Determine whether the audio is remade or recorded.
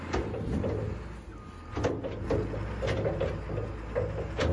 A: recorded